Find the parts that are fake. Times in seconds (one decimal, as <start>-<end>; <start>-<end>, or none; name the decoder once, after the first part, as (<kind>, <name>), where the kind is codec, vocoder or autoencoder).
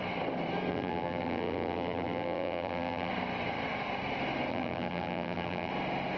0.7-3.1 (vocoder, BigVGAN v2); 4.5-5.7